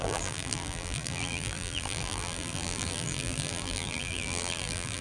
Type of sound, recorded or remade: remade